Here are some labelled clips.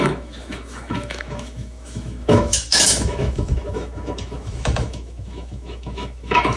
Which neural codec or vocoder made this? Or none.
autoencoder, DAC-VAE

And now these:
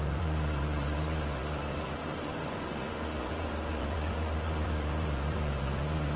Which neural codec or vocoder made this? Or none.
vocoder, Vocos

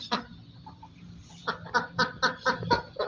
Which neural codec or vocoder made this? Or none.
vocoder, BigVGAN v2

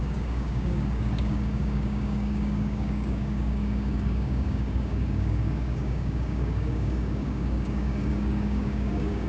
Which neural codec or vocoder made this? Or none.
codec, DAC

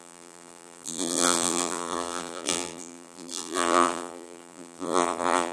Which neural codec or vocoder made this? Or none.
vocoder, BigVGAN v2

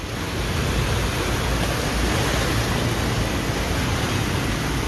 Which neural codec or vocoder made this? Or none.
none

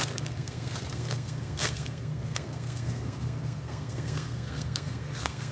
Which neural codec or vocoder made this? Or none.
codec, SNAC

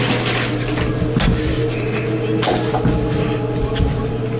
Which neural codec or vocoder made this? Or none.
none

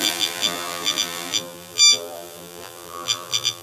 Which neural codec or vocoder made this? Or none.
vocoder, BigVGAN v2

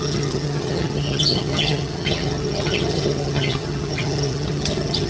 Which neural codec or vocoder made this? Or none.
vocoder, HiFi-GAN